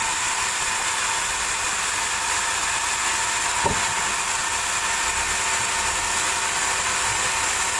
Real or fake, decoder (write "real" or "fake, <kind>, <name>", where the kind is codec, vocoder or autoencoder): real